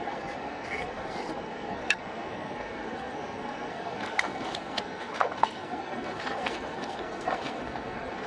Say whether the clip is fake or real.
fake